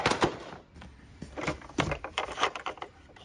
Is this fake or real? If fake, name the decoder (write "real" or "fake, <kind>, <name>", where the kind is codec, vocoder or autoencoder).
fake, vocoder, BigVGAN v2